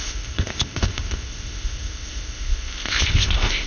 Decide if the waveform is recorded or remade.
remade